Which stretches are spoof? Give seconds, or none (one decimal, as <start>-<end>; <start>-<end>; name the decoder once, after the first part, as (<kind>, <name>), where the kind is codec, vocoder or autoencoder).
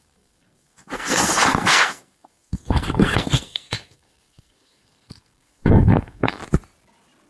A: 0.0-6.4 (codec, SNAC)